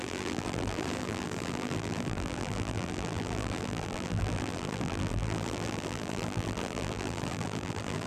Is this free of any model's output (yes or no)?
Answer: no